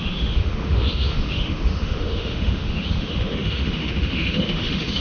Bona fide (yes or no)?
no